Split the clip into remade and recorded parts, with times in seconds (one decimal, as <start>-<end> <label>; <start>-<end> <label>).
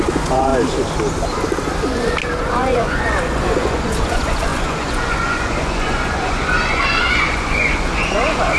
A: 0.0-0.5 remade; 0.5-2.4 recorded; 2.4-8.6 remade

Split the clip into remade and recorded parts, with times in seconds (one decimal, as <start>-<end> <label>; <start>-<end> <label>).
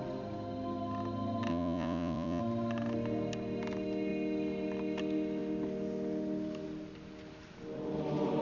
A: 0.0-1.5 recorded; 1.5-2.4 remade; 2.4-8.4 recorded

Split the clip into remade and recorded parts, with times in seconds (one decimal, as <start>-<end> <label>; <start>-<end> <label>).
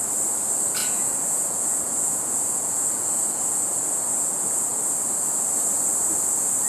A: 0.0-0.8 recorded; 0.8-4.8 remade; 4.8-6.7 recorded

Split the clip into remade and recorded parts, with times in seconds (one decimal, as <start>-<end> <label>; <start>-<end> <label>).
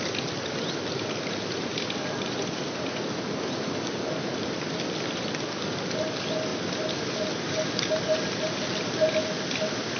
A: 0.0-10.0 recorded